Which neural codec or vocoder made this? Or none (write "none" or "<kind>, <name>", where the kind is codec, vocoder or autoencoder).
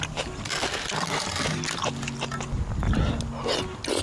none